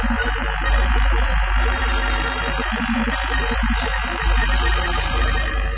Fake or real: fake